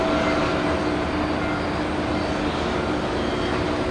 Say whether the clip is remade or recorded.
recorded